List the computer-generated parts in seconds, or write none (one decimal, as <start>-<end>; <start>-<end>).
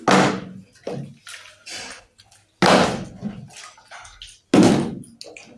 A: none